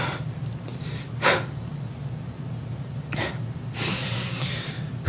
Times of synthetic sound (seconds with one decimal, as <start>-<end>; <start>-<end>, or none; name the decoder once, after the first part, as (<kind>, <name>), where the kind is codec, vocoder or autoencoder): 3.9-4.5 (codec, SNAC)